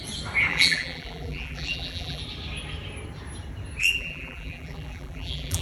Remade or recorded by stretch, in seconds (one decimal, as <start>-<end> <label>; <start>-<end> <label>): 0.0-0.5 recorded; 0.5-2.2 remade; 2.2-3.8 recorded; 3.8-5.6 remade